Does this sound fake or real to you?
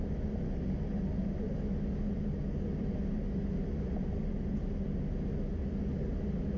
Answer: real